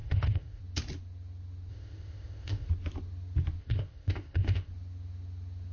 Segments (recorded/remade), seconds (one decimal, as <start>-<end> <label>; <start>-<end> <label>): 0.0-0.6 remade; 0.6-1.7 recorded; 1.7-2.7 remade; 2.7-3.6 recorded; 3.6-4.7 remade; 4.7-5.7 recorded